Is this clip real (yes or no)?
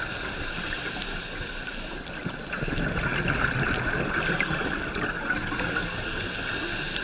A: yes